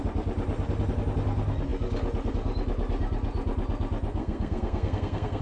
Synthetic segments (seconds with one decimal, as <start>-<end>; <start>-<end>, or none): 4.2-5.4